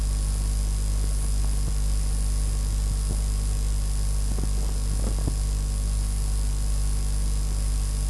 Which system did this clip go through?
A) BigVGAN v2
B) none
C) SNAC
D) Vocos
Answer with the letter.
B